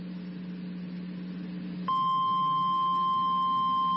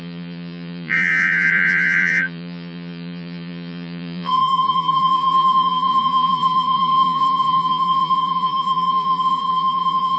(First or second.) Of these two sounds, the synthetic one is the second